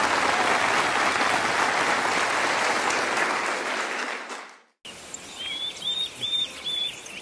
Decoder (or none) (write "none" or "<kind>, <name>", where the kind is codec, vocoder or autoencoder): none